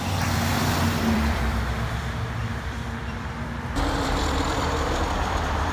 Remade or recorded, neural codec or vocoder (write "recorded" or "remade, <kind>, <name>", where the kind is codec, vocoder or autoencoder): remade, vocoder, BigVGAN v2